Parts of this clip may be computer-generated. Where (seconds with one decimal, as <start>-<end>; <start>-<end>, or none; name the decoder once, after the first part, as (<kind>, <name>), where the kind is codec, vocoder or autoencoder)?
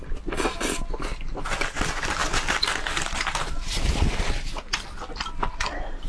none